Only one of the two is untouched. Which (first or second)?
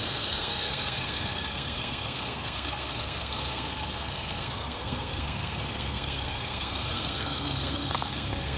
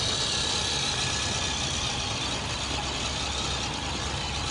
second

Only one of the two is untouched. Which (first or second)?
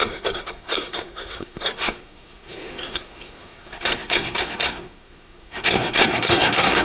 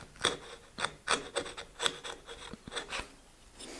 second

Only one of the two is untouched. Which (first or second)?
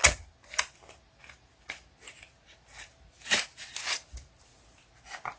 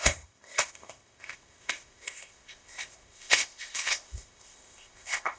first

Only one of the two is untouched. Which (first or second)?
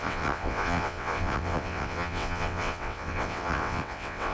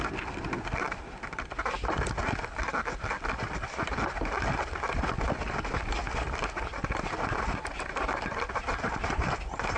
second